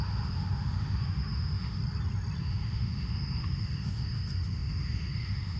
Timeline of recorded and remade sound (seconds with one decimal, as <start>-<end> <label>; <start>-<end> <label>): 0.0-1.8 remade; 1.8-2.4 recorded; 2.4-5.6 remade